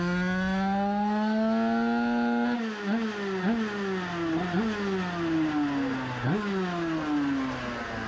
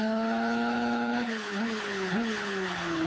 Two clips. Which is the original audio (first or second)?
first